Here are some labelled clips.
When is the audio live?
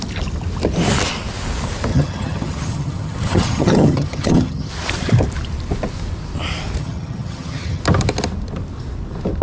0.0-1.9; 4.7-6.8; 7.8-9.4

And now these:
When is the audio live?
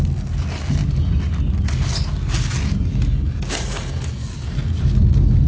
0.0-5.5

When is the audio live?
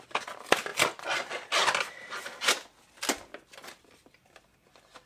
0.7-3.8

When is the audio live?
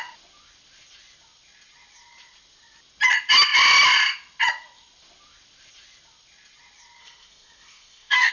0.0-7.0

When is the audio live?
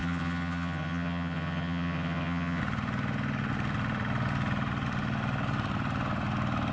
2.6-6.7